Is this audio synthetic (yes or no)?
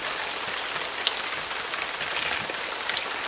no